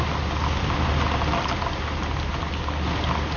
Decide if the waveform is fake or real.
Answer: real